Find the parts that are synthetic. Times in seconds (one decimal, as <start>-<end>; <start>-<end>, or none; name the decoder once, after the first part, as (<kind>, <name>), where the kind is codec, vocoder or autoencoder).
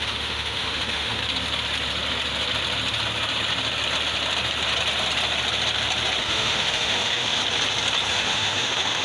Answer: 0.0-1.2 (autoencoder, DAC-VAE); 6.2-7.4; 8.1-9.0